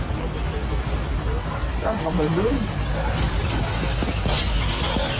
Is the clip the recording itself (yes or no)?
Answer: yes